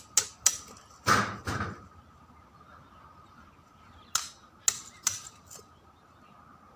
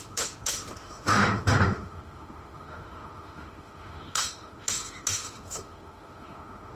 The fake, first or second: second